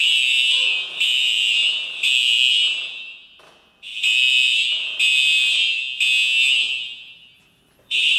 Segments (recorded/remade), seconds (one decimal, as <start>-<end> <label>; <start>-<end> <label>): 0.0-5.8 remade; 5.8-7.6 recorded; 7.6-8.2 remade